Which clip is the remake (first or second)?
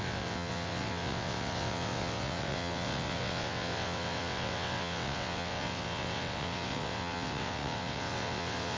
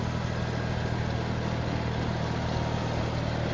first